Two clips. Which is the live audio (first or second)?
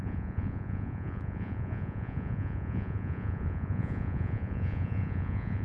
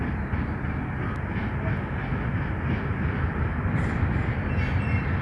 second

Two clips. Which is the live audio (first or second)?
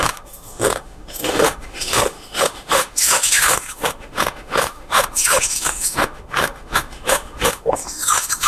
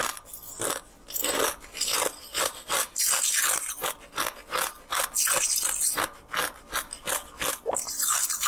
second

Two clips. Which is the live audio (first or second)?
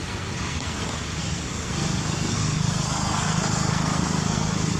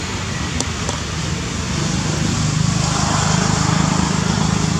second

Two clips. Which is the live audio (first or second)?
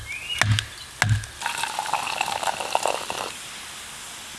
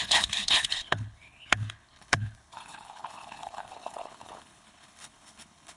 first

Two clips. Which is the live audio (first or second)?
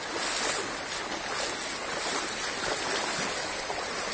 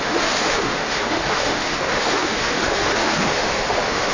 first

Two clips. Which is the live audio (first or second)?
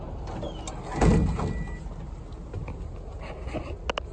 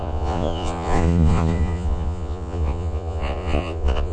first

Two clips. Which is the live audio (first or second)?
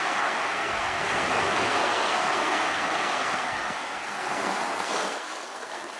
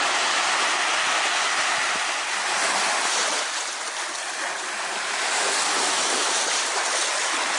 second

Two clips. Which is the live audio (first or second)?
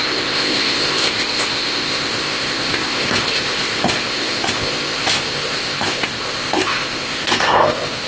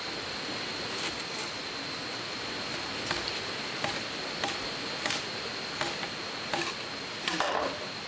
second